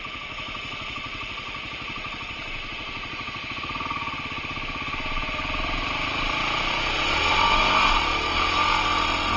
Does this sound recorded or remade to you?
recorded